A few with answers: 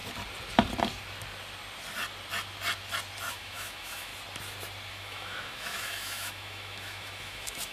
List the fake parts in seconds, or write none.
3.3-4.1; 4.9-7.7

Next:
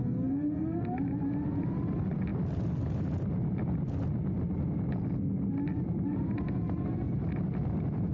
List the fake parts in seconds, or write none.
none

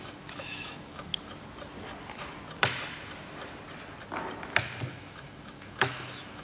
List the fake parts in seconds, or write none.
0.0-1.1; 4.9-6.4

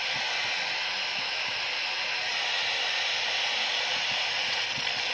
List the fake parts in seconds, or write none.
1.1-1.6

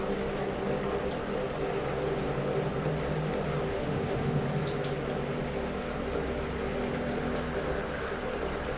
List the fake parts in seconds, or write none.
3.7-4.4

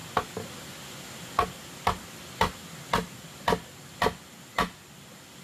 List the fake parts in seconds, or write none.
none